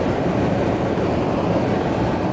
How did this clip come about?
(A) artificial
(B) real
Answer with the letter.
B